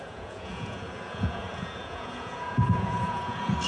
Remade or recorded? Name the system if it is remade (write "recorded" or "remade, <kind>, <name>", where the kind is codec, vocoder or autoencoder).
remade, vocoder, Vocos